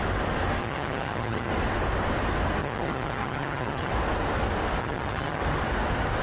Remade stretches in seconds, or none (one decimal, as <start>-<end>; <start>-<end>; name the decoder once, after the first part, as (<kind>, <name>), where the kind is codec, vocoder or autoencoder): 0.6-1.5 (vocoder, HiFi-GAN); 2.6-3.9; 4.8-5.4

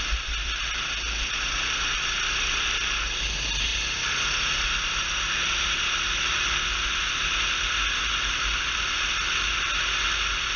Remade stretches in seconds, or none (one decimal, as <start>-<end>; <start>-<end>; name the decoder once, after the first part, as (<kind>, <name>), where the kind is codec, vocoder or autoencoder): none

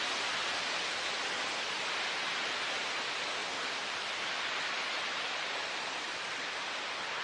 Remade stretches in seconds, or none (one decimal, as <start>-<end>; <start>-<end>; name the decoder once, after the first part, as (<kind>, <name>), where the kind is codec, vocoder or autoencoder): 3.4-6.7 (vocoder, BigVGAN v2)

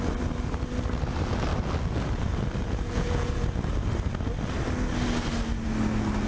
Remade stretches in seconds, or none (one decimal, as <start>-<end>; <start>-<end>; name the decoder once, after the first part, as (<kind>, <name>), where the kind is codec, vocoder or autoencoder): 2.6-3.6 (vocoder, Vocos)

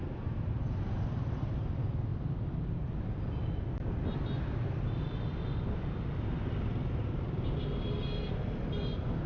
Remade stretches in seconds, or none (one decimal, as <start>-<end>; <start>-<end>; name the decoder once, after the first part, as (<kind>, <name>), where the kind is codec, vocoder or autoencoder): none

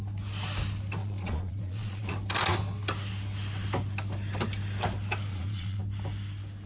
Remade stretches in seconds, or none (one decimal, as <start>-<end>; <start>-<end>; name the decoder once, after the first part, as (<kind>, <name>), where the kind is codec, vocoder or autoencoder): 1.0-2.1 (vocoder, Vocos); 5.3-5.8

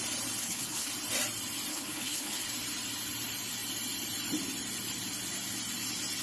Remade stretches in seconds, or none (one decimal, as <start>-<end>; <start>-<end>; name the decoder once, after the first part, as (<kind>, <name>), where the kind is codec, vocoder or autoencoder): 0.4-0.9 (codec, HILCodec); 1.7-2.4

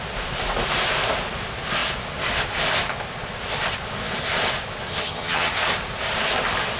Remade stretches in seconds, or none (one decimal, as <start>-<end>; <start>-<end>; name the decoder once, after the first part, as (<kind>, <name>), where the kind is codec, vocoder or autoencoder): 4.9-5.5 (vocoder, HiFi-GAN)